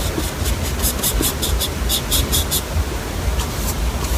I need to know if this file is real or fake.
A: real